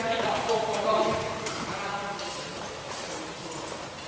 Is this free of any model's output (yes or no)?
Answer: yes